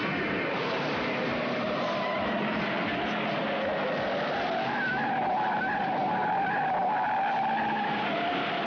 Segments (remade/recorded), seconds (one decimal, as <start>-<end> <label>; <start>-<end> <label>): 0.0-1.2 recorded; 1.2-2.6 remade; 2.6-8.7 recorded